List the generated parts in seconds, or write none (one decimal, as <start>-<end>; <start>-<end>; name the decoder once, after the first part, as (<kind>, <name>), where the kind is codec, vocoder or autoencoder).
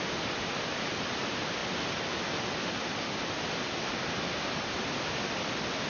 none